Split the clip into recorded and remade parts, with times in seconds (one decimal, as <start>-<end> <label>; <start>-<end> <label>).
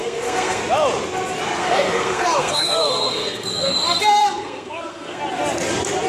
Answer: 0.0-0.6 remade; 0.6-1.6 recorded; 1.6-5.2 remade; 5.2-6.1 recorded